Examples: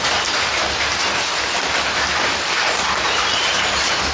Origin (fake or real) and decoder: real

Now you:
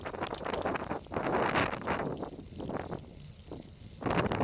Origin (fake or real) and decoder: real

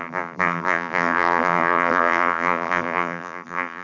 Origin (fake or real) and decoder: fake, vocoder, BigVGAN v2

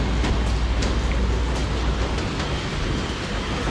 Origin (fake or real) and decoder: real